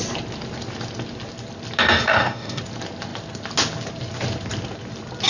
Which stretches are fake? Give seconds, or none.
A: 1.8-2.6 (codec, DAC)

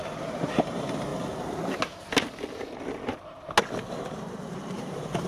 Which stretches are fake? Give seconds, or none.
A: 0.0-1.1 (vocoder, BigVGAN v2); 3.9-5.3

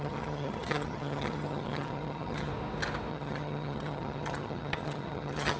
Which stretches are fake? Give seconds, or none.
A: 0.0-2.5 (vocoder, HiFi-GAN); 3.1-5.6

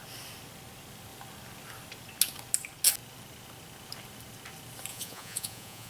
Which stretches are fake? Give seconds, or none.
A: 4.9-5.9 (vocoder, Vocos)

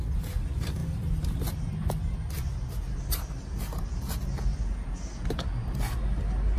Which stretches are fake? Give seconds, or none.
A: 0.8-1.9 (vocoder, BigVGAN v2); 4.5-5.3